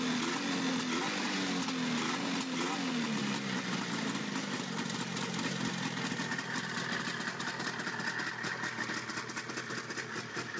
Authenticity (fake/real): real